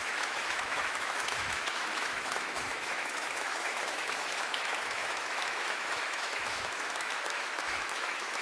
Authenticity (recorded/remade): remade